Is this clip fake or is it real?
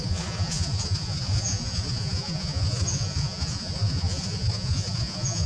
fake